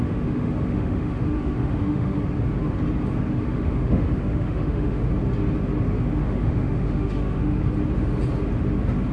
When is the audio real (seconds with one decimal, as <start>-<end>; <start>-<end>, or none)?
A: 2.2-3.4; 5.0-6.3; 7.6-9.1